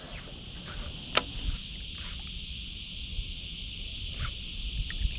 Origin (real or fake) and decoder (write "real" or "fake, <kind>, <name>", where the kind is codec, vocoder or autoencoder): real